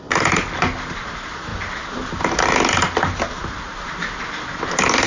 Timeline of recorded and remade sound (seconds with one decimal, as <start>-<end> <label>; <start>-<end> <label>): 0.0-5.1 recorded